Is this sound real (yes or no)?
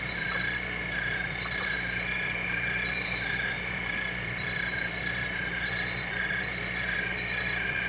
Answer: no